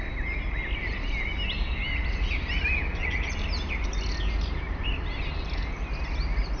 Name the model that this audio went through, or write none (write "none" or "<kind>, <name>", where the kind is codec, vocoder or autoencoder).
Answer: none